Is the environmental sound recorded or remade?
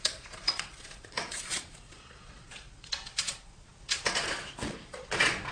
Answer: remade